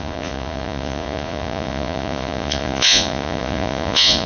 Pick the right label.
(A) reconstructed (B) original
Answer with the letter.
A